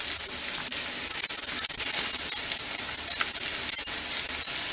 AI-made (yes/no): no